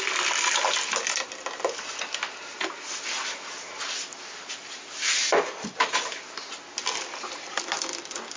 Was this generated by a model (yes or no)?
no